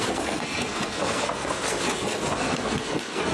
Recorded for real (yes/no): no